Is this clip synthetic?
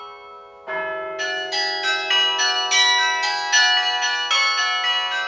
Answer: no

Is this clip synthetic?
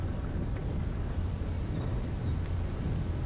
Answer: no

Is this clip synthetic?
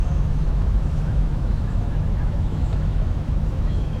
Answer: yes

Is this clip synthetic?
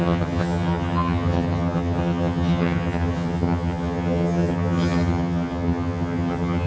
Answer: yes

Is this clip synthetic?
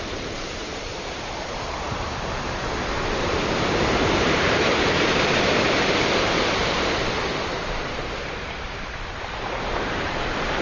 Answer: yes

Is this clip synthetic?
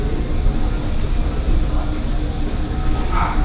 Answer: no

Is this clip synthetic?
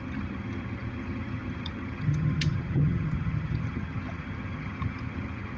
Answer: yes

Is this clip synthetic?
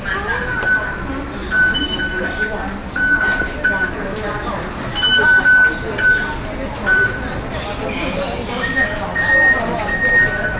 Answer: no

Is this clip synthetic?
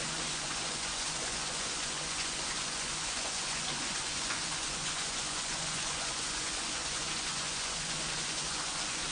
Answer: yes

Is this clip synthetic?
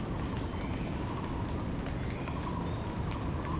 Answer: no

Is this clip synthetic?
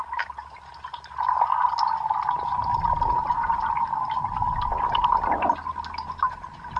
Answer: no